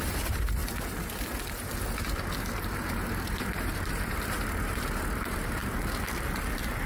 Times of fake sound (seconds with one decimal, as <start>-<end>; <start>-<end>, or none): 0.0-0.6; 2.4-5.6